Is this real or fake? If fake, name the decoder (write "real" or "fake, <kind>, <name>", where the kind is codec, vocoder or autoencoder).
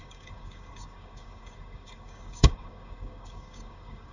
fake, codec, DAC